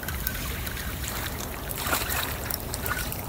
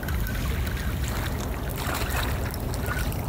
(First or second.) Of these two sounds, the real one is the second